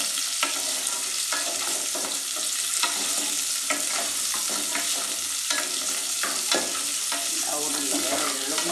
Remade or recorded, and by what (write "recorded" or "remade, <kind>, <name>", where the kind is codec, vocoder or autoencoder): recorded